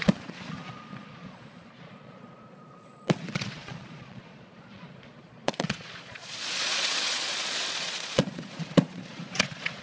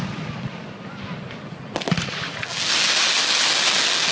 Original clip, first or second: second